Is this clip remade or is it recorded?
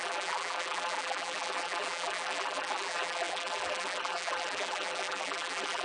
remade